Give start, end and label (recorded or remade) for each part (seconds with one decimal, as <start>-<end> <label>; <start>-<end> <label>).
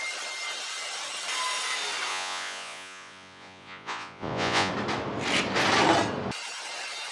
0.0-2.1 recorded; 2.1-4.7 remade; 4.7-7.1 recorded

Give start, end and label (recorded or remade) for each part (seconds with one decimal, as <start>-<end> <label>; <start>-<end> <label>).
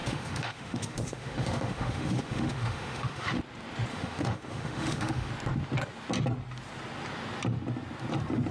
0.0-3.4 remade; 3.4-3.9 recorded; 3.9-5.3 remade; 5.3-8.5 recorded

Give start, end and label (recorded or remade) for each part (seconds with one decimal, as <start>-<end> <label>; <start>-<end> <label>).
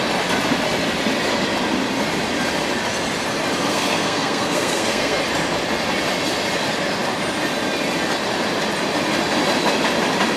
0.0-3.7 recorded; 3.7-5.2 remade; 5.2-10.4 recorded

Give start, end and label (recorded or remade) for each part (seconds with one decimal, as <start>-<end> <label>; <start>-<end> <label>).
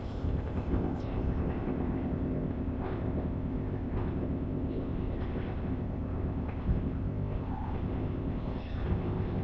0.0-9.4 remade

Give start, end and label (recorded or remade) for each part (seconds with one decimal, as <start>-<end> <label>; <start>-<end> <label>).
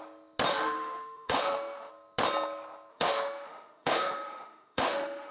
0.0-0.5 recorded; 0.5-1.9 remade; 1.9-2.9 recorded; 2.9-5.3 remade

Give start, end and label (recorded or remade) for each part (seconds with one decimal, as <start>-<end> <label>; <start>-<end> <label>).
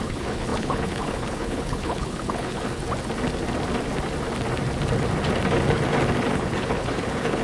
0.0-2.8 remade; 2.8-6.3 recorded; 6.3-7.4 remade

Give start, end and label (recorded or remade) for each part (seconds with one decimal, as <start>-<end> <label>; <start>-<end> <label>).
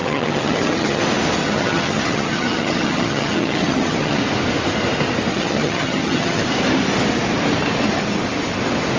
0.0-1.0 remade; 1.0-1.4 recorded; 1.4-4.2 remade; 4.2-5.3 recorded; 5.3-6.4 remade; 6.4-9.0 recorded